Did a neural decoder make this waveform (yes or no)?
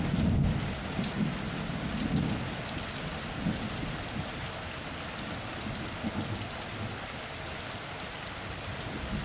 no